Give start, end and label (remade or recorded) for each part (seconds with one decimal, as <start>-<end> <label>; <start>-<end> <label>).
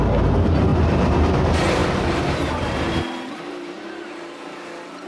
0.0-0.7 recorded; 0.7-1.3 remade; 1.3-1.8 recorded; 1.8-5.1 remade